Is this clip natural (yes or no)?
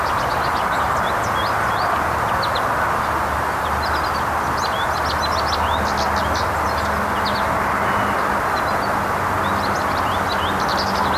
yes